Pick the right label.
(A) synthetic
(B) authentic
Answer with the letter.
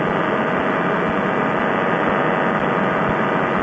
B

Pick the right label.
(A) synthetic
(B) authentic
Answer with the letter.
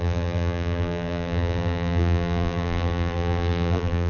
A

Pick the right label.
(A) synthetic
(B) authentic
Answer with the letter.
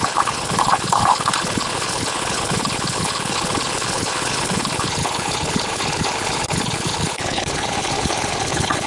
A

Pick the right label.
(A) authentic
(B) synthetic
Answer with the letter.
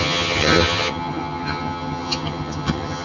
B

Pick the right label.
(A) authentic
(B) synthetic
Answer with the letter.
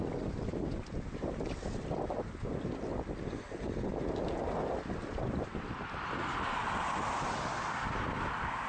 A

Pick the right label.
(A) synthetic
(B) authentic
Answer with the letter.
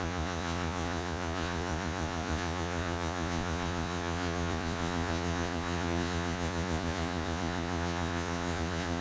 A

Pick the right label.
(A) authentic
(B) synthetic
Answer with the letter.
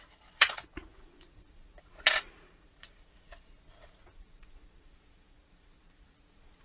B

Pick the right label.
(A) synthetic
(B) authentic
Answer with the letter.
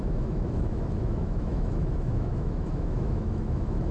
A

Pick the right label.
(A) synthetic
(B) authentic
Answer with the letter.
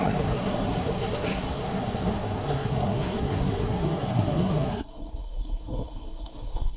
A